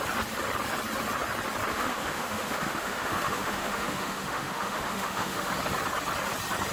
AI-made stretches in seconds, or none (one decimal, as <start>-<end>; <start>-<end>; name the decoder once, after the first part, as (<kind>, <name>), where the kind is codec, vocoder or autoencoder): 1.7-5.5 (autoencoder, DAC-VAE)